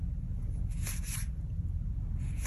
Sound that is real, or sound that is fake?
real